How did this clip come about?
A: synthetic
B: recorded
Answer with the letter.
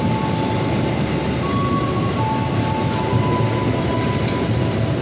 B